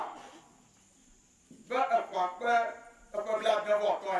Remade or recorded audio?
recorded